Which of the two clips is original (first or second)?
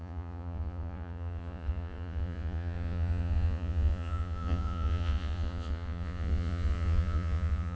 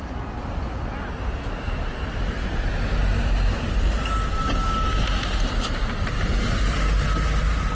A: second